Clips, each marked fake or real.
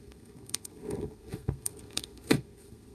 fake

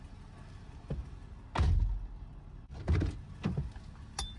real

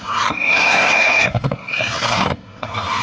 fake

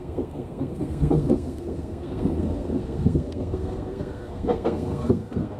fake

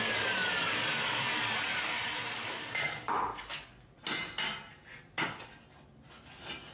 real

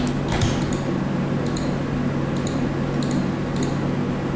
real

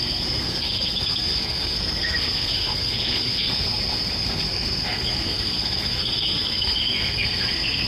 fake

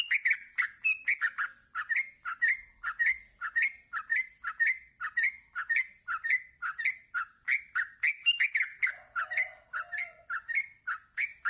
real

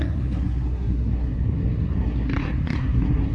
fake